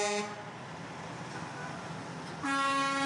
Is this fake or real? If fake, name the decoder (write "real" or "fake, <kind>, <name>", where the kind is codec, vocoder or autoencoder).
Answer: real